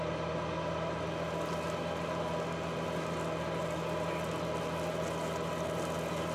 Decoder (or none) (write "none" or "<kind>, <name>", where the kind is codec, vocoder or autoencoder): none